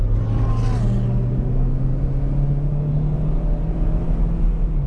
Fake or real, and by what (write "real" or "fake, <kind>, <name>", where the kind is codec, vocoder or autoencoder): real